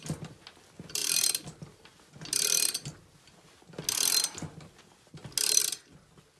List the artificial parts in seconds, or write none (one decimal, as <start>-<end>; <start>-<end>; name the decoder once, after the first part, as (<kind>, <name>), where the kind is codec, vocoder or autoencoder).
none